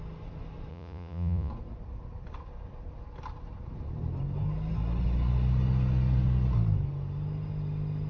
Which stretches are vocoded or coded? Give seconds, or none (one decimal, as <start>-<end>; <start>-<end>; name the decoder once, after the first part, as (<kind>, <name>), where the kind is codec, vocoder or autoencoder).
0.7-1.5 (vocoder, Vocos)